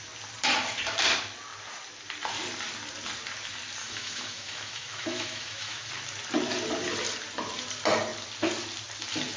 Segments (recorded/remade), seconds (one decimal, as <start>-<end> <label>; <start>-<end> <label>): 0.0-3.8 recorded; 3.8-5.9 remade; 5.9-9.4 recorded